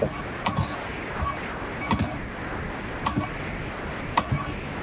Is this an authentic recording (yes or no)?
yes